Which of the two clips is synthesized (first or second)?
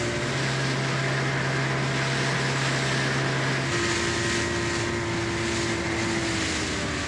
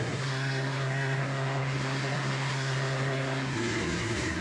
second